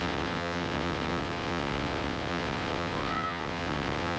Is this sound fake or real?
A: fake